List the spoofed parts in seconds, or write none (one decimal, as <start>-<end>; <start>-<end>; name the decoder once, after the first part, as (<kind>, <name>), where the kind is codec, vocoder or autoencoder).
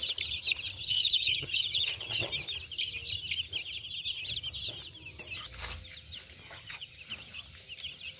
0.8-2.3 (vocoder, HiFi-GAN); 6.4-7.0